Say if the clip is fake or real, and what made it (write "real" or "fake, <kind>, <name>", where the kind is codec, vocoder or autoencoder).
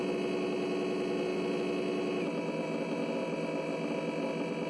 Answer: real